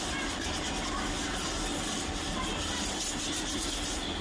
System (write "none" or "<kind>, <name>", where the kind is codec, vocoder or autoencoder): none